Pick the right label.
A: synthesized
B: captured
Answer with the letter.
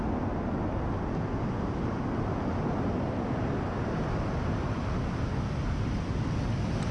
B